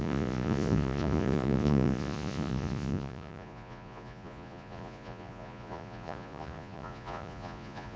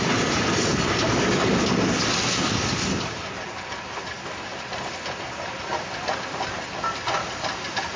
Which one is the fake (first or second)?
first